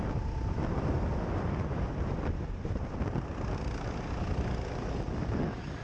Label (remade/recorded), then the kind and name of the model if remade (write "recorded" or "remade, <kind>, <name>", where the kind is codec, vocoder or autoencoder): recorded